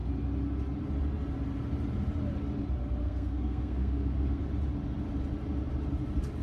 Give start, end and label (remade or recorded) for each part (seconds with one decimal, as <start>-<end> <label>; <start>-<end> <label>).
0.0-3.0 recorded; 3.0-4.4 remade; 4.4-6.4 recorded